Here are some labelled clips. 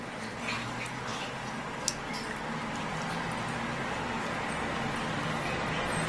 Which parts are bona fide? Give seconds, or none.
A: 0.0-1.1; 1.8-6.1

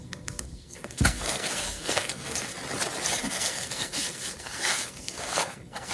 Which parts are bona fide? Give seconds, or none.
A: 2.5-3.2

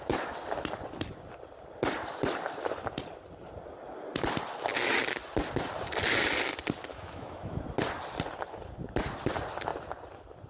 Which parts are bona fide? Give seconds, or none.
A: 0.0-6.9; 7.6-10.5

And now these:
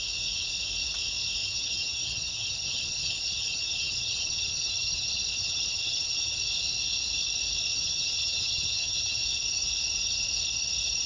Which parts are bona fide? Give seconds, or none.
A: 0.0-1.4; 6.4-7.7; 9.2-11.1

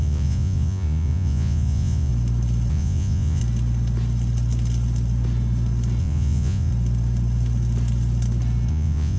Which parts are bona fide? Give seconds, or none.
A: 2.1-2.7; 3.4-6.0; 6.7-8.7

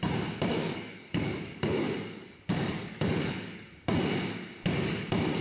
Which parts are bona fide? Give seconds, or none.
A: 0.0-0.5; 3.7-5.4

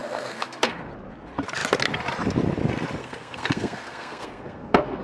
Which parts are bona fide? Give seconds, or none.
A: 0.9-3.0

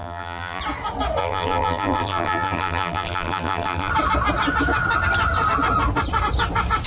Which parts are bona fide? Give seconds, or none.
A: 0.6-1.2; 3.9-6.9